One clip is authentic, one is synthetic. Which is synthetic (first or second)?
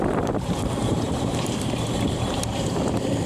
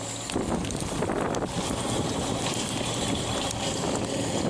first